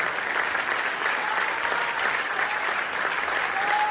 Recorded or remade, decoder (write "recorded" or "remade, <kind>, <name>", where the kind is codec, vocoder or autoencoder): recorded